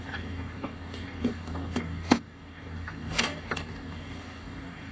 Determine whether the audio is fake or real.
fake